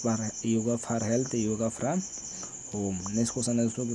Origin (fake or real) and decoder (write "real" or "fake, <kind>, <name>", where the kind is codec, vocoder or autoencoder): real